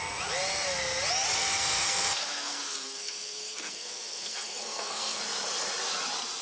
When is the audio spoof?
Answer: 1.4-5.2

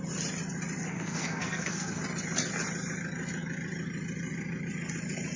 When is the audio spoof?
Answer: 0.9-2.0

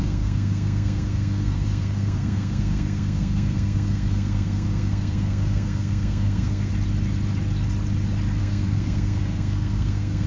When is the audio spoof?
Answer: 0.0-6.7; 8.4-10.3

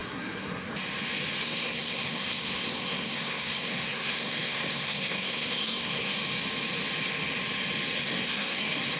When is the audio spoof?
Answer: 0.0-0.7; 1.4-6.1; 8.0-9.0